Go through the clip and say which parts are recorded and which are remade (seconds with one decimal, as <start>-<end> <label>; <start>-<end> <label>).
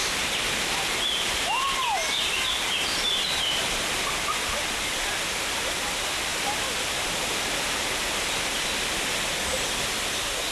0.0-3.8 remade; 3.8-10.5 recorded